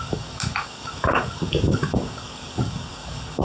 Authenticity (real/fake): fake